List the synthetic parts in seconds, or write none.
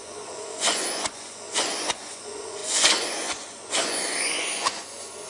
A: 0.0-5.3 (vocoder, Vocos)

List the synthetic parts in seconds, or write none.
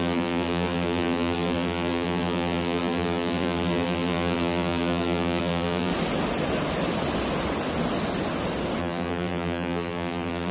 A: 0.0-5.9 (vocoder, BigVGAN v2); 8.8-10.5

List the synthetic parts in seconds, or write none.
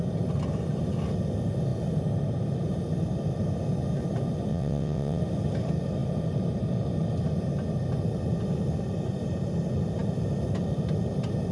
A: 4.5-5.2 (vocoder, WaveNeXt)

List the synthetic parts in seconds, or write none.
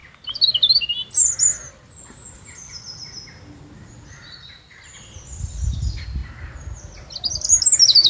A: none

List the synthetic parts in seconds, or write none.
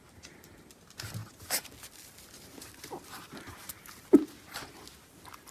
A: none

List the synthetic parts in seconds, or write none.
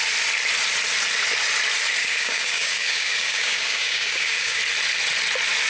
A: 2.0-4.6 (codec, DAC)